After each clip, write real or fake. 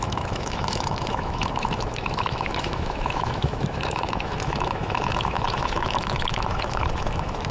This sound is fake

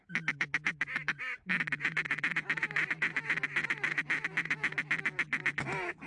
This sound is real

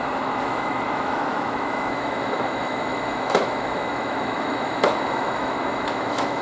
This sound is fake